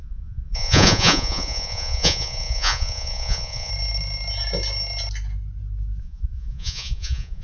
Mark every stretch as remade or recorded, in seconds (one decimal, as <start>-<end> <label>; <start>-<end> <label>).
0.0-3.7 remade; 3.7-6.0 recorded; 6.0-7.4 remade